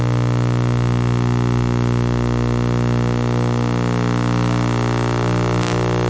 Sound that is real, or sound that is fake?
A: real